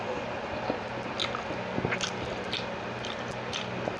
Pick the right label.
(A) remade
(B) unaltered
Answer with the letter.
B